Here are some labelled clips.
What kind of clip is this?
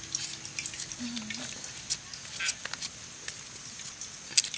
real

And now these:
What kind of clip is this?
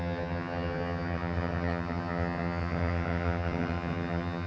fake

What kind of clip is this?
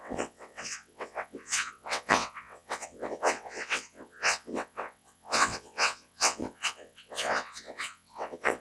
fake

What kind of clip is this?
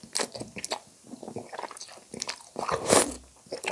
real